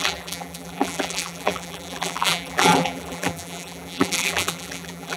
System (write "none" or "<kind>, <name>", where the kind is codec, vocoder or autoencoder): vocoder, BigVGAN v2